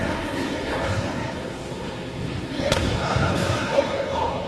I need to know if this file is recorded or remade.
remade